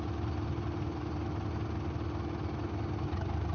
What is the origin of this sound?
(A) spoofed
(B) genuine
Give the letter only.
B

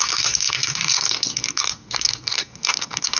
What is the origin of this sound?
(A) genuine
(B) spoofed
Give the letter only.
B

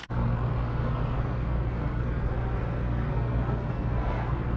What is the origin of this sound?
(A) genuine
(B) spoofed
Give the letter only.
B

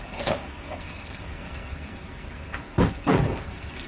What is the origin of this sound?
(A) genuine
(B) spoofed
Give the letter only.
B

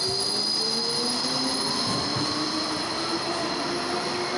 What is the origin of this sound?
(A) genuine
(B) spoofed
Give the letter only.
A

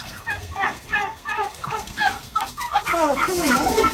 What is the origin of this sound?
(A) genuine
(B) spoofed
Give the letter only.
B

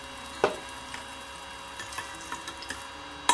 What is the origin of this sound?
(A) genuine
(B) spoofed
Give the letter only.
A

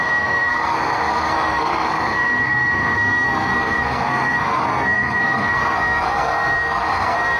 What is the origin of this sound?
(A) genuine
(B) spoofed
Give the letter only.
B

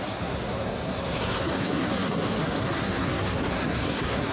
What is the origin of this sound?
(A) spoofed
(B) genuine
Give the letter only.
A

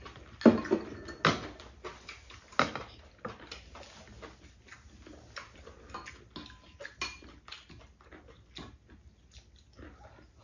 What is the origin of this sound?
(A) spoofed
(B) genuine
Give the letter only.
B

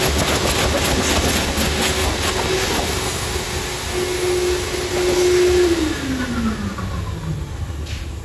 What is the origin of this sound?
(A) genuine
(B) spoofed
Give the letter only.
A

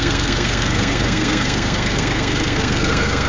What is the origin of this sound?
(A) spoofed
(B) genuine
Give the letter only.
A